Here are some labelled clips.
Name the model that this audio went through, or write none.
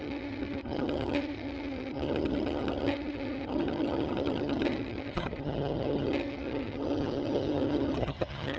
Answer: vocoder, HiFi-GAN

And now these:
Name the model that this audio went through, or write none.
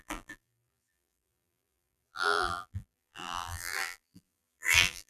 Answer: vocoder, BigVGAN v2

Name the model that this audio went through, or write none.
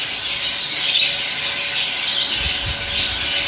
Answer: none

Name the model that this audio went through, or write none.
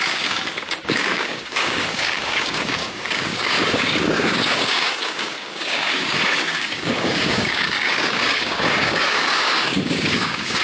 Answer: codec, DAC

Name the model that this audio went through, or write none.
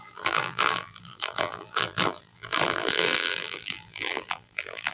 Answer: vocoder, BigVGAN v2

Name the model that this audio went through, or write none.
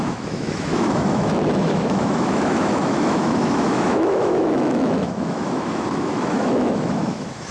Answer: autoencoder, DAC-VAE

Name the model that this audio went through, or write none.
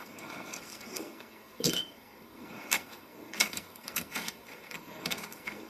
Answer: codec, SNAC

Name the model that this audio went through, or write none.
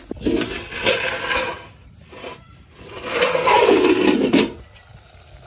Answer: vocoder, BigVGAN v2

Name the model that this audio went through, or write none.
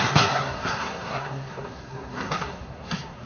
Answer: codec, SNAC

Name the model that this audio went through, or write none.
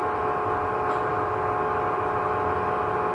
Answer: none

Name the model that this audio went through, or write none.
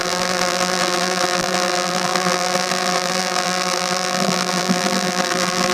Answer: vocoder, BigVGAN v2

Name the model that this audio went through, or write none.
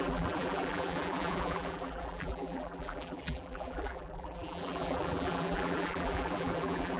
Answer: vocoder, BigVGAN v2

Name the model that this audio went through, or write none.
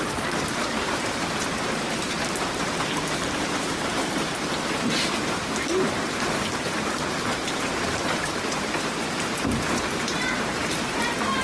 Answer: vocoder, BigVGAN v2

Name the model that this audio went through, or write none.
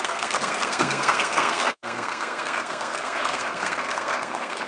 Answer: codec, SNAC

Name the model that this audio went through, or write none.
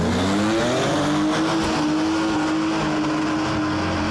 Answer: none